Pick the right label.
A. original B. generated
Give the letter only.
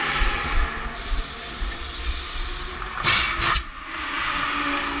A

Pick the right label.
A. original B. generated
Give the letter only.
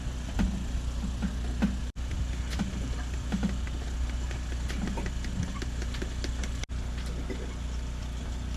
A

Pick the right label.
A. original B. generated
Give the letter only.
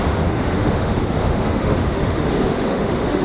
B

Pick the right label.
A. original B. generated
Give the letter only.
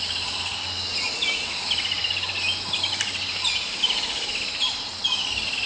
A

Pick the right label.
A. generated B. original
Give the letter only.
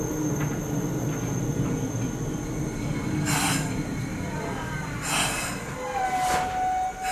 B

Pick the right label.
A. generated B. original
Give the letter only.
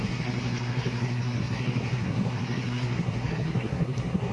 A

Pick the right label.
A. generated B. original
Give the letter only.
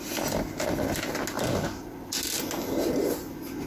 B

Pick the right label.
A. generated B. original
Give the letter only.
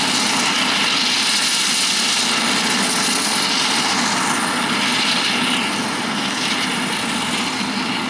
B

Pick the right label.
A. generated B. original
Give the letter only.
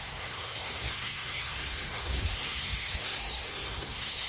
A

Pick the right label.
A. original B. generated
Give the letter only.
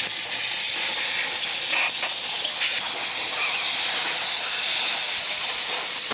A